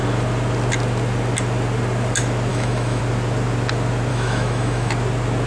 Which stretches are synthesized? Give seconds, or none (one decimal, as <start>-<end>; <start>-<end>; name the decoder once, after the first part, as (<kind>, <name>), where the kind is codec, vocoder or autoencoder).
2.5-3.0 (autoencoder, DAC-VAE); 4.1-4.9